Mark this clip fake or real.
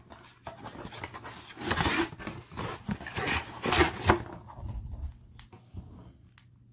real